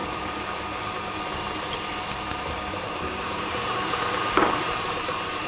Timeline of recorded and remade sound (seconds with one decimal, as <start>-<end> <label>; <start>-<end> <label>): 0.0-2.8 recorded; 2.8-5.5 remade